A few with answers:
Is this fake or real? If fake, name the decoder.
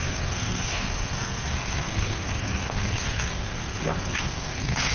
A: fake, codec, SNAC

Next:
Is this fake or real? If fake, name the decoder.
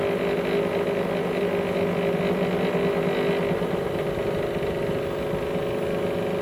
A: real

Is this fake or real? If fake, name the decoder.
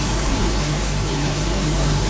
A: fake, codec, SNAC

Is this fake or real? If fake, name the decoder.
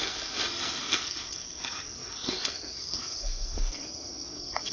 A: fake, codec, SNAC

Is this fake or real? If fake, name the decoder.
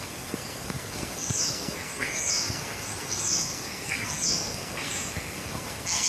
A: fake, codec, SNAC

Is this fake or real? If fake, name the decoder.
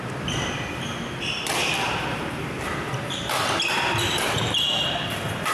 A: real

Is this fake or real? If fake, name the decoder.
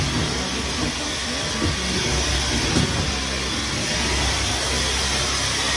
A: real